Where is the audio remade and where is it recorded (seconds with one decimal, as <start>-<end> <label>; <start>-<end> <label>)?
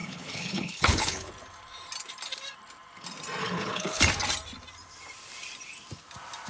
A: 0.0-1.3 remade; 1.3-3.4 recorded; 3.4-4.0 remade; 4.0-6.5 recorded